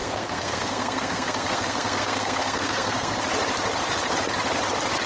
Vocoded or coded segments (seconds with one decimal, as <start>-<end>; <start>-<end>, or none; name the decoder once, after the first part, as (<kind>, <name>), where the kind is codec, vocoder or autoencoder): 0.0-3.1 (codec, SNAC)